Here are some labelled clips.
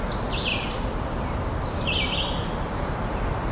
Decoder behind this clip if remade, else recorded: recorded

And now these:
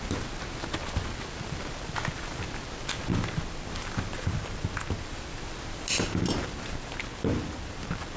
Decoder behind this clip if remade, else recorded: recorded